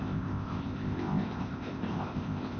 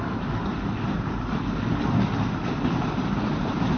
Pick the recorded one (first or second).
second